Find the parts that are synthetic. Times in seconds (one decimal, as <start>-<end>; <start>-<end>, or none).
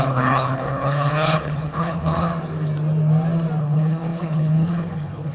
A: 0.0-2.3; 3.6-5.3